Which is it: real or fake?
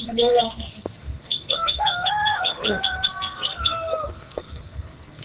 fake